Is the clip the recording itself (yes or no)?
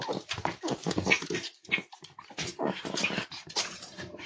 no